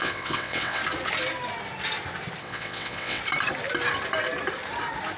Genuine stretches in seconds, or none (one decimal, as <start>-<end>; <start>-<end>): 0.8-2.4; 3.2-5.2